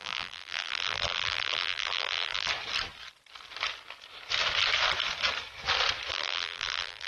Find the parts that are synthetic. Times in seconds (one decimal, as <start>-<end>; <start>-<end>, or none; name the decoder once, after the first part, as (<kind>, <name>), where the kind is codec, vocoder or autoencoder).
0.0-2.5 (vocoder, BigVGAN v2); 6.1-7.1